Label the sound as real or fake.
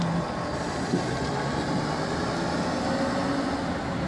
real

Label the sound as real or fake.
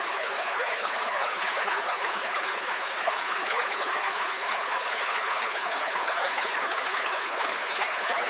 fake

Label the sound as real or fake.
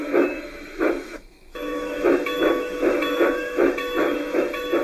fake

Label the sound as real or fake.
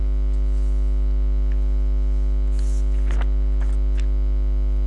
real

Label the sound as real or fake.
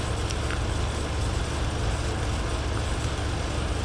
real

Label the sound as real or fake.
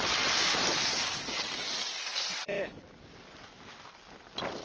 real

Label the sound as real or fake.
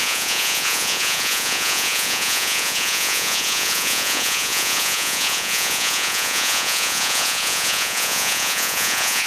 fake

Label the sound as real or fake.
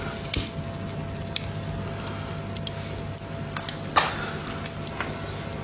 real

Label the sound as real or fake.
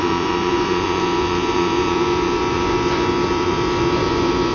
fake